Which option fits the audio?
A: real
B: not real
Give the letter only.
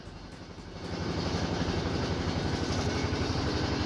A